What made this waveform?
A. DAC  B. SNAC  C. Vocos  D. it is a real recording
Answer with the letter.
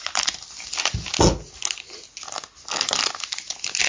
D